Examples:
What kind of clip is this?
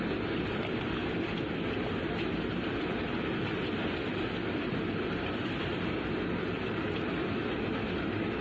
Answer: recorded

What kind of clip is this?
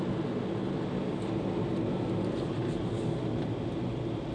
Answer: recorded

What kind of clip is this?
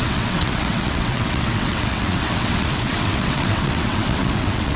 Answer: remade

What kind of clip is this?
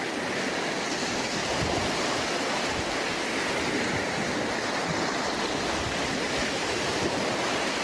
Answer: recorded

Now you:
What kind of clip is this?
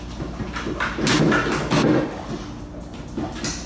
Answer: recorded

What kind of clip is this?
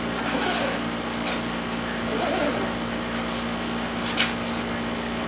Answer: recorded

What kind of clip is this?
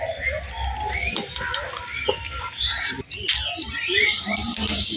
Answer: recorded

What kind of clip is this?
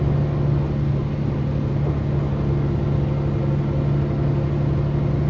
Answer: recorded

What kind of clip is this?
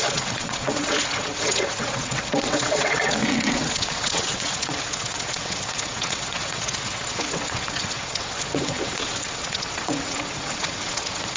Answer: remade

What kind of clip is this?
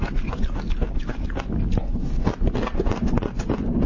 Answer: recorded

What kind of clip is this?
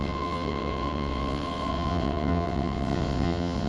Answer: remade